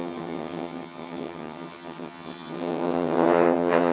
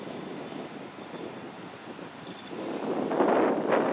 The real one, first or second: second